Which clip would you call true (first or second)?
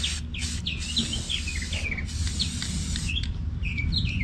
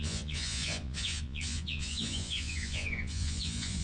first